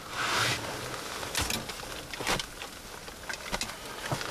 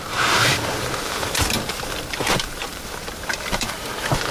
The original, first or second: first